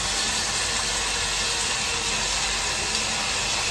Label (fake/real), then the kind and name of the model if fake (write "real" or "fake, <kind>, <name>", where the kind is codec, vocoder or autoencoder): real